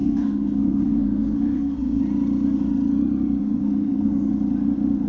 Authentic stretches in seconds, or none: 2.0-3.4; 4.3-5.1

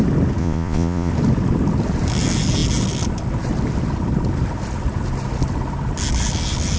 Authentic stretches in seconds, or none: 0.0-0.4; 1.1-6.8

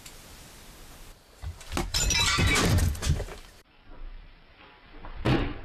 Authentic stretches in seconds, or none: 0.0-1.9